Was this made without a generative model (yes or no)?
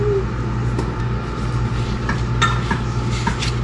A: yes